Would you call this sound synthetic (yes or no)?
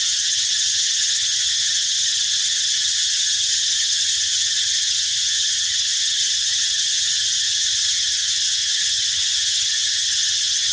yes